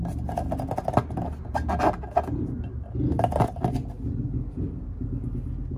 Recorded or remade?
recorded